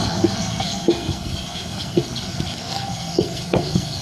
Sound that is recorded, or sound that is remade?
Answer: remade